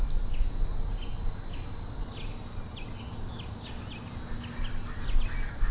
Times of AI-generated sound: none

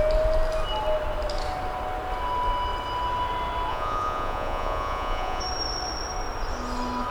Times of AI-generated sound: 3.7-5.4